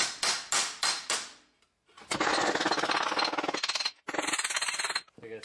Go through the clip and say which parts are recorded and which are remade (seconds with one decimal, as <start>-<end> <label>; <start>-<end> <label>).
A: 0.0-5.4 recorded

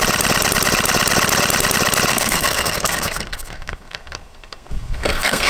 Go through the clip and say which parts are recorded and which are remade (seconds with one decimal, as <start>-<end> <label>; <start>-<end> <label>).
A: 0.0-2.1 recorded; 2.1-5.5 remade

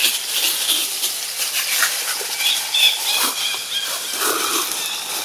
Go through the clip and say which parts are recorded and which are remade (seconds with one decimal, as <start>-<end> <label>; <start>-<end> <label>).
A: 0.0-5.2 recorded

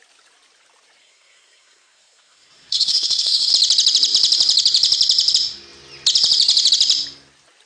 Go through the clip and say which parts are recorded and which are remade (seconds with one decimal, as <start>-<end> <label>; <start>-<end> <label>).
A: 0.0-1.0 recorded; 1.0-3.5 remade; 3.5-7.7 recorded

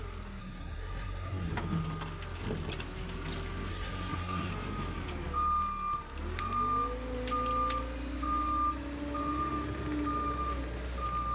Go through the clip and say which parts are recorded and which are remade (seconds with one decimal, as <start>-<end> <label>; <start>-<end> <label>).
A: 0.0-0.4 recorded; 0.4-1.5 remade; 1.5-3.7 recorded; 3.7-4.5 remade; 4.5-11.3 recorded

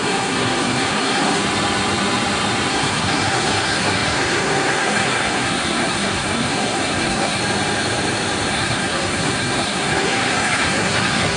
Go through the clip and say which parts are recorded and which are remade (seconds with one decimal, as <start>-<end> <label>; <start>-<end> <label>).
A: 0.0-1.4 remade; 1.4-2.7 recorded; 2.7-7.4 remade; 7.4-8.5 recorded; 8.5-11.4 remade

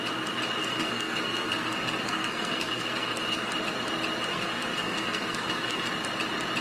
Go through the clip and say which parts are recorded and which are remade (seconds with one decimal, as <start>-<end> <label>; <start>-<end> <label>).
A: 0.0-0.6 recorded; 0.6-3.5 remade; 3.5-4.3 recorded; 4.3-5.9 remade; 5.9-6.6 recorded

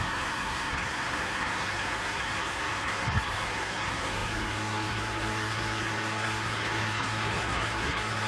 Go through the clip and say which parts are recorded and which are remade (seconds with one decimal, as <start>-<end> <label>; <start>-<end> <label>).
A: 0.0-8.3 remade